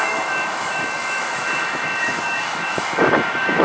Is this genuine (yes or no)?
no